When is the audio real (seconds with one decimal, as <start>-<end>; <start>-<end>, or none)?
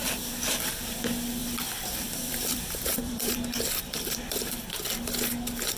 0.0-1.4; 4.8-5.8